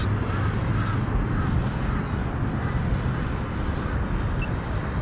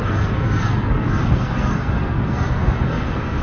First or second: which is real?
first